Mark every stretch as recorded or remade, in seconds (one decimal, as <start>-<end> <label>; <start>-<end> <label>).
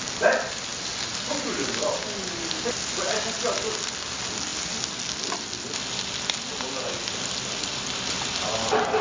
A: 0.0-9.0 recorded